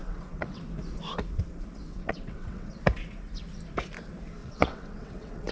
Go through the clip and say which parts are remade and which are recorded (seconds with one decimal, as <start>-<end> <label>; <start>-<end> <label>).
0.0-0.6 remade; 0.6-1.9 recorded; 1.9-2.8 remade; 2.8-4.4 recorded; 4.4-5.5 remade